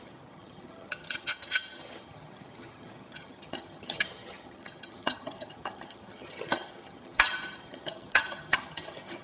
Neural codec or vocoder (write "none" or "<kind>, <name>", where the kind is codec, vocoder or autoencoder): vocoder, HiFi-GAN